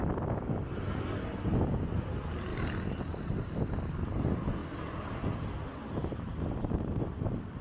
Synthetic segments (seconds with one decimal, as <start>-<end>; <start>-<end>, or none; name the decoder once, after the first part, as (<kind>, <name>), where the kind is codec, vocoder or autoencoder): 1.9-2.5 (vocoder, BigVGAN v2); 3.3-7.6